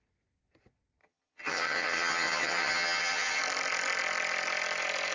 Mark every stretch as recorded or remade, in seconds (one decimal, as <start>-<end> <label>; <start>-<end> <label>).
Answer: 0.0-1.0 recorded; 1.0-3.4 remade; 3.4-5.1 recorded